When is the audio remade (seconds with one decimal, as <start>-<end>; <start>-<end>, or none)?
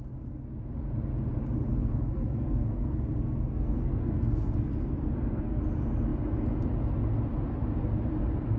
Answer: 1.8-5.6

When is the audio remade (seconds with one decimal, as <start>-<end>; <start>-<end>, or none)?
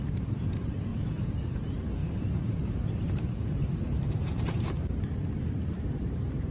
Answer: 0.0-0.9; 1.6-6.5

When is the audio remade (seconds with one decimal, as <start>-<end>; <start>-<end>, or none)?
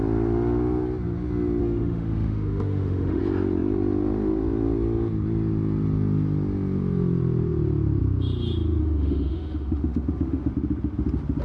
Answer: 1.6-3.2; 8.8-10.5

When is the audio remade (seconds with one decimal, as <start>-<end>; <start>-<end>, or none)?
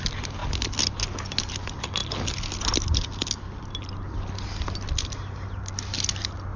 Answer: none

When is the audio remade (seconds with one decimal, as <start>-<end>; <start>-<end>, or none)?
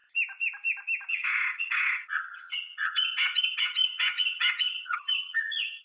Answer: 1.1-5.8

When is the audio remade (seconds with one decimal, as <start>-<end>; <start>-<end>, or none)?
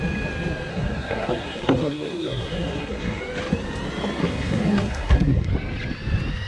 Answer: 0.7-3.2; 4.2-5.5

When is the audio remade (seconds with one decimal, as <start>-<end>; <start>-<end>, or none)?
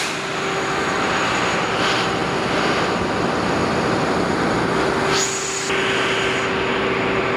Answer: none